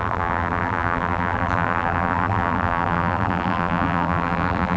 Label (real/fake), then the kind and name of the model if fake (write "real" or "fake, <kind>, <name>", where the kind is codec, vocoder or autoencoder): fake, vocoder, BigVGAN v2